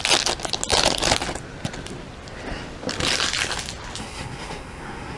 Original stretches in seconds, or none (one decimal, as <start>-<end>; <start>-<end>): 0.0-4.0